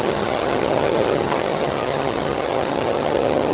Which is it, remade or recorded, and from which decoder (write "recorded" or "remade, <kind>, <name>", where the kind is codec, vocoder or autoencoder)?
remade, vocoder, HiFi-GAN